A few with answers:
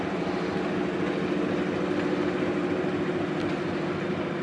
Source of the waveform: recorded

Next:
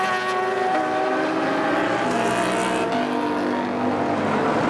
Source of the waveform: recorded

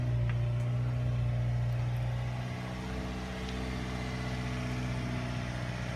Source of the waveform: recorded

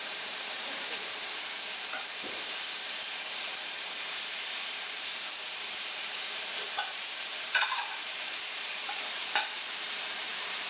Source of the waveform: remade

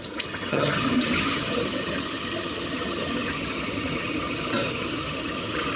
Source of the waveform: remade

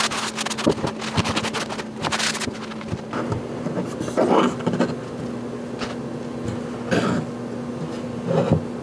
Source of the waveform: recorded